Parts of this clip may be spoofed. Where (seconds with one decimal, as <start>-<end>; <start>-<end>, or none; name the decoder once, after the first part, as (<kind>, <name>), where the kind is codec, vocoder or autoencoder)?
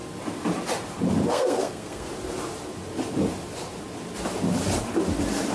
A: 1.3-2.1 (codec, SNAC)